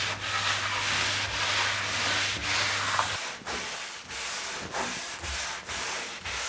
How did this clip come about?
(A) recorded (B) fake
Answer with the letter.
A